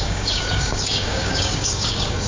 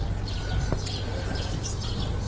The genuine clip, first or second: second